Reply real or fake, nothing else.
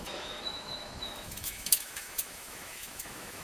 fake